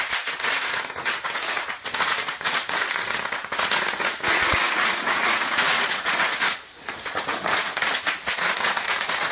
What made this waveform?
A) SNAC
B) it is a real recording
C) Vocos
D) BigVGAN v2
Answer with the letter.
C